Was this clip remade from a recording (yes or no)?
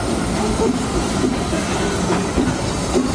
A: yes